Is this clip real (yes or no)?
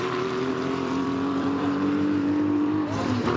no